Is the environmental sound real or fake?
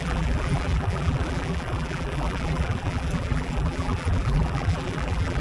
fake